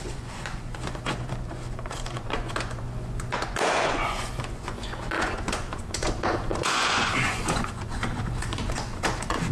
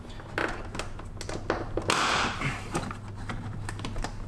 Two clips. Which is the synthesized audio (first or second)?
first